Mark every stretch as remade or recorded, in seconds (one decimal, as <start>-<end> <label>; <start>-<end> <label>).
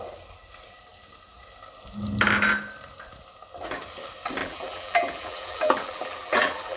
0.0-4.4 recorded; 4.4-6.8 remade